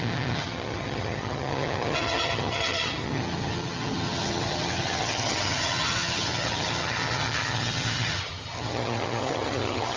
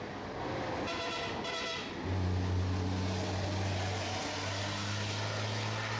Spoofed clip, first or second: first